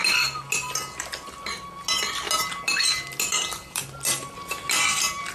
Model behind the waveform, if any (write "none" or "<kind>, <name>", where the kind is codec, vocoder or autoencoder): none